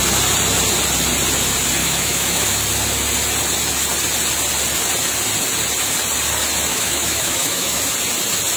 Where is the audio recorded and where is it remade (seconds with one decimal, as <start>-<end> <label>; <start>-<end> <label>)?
0.0-1.8 recorded; 1.8-2.6 remade; 2.6-6.7 recorded; 6.7-7.8 remade; 7.8-8.6 recorded